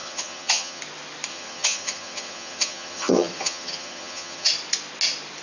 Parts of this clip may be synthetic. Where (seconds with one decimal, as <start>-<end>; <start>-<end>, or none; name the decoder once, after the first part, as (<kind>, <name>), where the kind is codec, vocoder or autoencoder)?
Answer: 0.0-0.8 (vocoder, HiFi-GAN); 1.3-4.5